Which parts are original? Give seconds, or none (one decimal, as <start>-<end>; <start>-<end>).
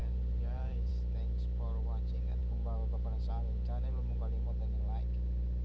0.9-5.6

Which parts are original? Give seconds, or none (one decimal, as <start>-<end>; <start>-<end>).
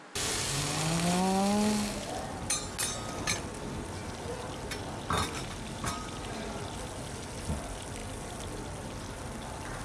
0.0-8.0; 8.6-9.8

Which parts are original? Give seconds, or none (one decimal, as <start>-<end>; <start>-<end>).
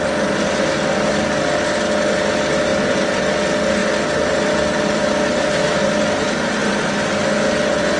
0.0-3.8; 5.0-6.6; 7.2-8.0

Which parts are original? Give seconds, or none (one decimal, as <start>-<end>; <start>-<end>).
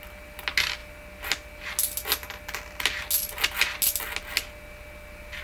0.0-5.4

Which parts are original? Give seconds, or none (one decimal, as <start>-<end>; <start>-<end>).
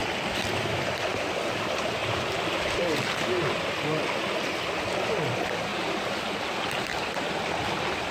1.1-5.7; 6.4-8.1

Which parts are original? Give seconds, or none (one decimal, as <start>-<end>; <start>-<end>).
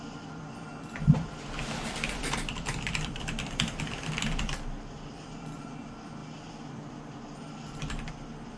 none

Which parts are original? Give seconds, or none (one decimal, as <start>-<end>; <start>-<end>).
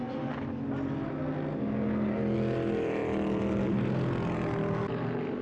0.0-5.4